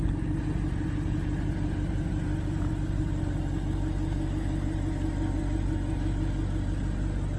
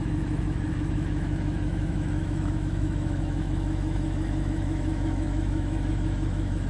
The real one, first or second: first